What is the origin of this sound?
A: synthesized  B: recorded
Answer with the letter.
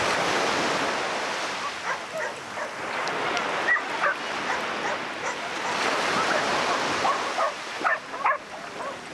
B